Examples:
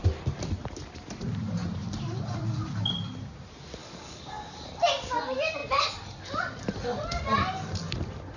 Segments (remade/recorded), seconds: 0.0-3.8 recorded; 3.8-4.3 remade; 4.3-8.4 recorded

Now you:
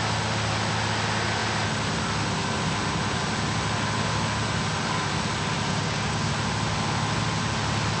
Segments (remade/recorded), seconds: 0.0-5.7 recorded; 5.7-6.3 remade; 6.3-8.0 recorded

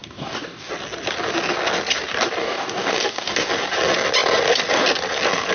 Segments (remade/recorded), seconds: 0.0-0.7 remade; 0.7-2.4 recorded; 2.4-3.5 remade; 3.5-5.5 recorded

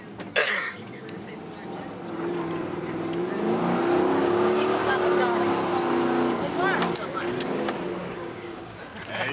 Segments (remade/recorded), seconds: 0.0-0.4 recorded; 0.4-1.3 remade; 1.3-4.2 recorded; 4.2-4.8 remade; 4.8-8.0 recorded; 8.0-8.8 remade; 8.8-9.3 recorded

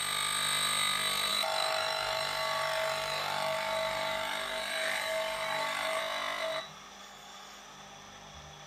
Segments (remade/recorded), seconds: 0.0-1.3 recorded; 1.3-6.0 remade; 6.0-7.0 recorded; 7.0-7.6 remade; 7.6-8.7 recorded

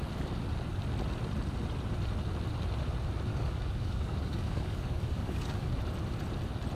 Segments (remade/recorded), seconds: 0.0-3.3 recorded; 3.3-5.7 remade; 5.7-6.7 recorded